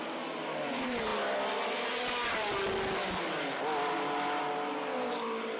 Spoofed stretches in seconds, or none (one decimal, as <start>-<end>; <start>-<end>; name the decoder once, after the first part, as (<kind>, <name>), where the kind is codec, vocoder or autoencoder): none